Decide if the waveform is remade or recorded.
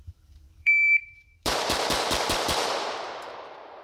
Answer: remade